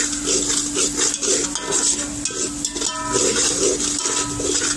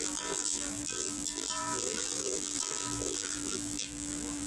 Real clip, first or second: first